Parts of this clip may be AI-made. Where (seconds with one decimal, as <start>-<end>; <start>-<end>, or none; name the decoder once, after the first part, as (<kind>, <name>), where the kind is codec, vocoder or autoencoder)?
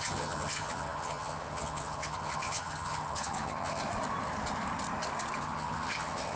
0.0-3.8 (vocoder, HiFi-GAN); 5.4-6.4